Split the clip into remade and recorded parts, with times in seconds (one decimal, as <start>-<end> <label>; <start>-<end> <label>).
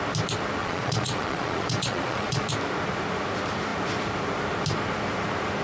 0.0-0.6 recorded; 0.6-2.5 remade; 2.5-5.6 recorded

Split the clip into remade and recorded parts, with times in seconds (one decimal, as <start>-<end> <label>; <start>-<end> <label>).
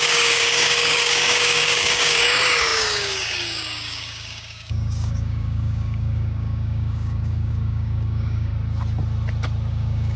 0.0-8.5 remade; 8.5-9.7 recorded; 9.7-10.2 remade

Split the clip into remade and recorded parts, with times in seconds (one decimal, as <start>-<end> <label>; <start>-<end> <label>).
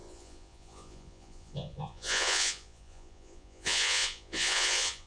0.0-5.1 remade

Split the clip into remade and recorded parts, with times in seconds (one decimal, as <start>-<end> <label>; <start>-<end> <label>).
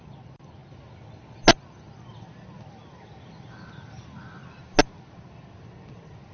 0.0-6.3 recorded